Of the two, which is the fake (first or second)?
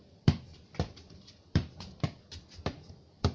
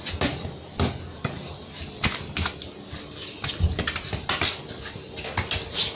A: first